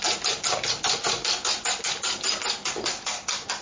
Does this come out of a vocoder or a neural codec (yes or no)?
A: no